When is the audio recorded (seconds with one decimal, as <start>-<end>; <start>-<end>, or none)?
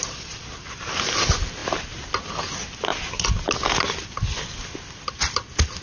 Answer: 0.0-5.8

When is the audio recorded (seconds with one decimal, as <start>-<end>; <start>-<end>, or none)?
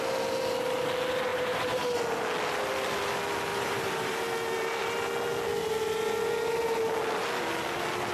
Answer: 0.0-1.3; 2.0-3.5; 4.2-8.1